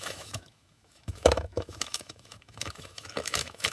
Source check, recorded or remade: remade